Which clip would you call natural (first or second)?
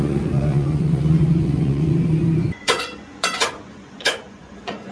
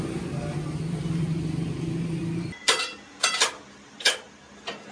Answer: second